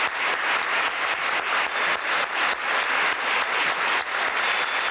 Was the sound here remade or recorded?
recorded